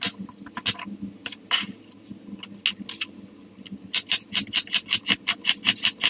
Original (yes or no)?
yes